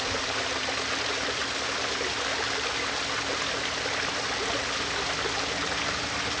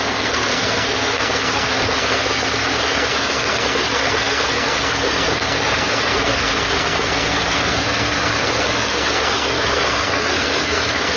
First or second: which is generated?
second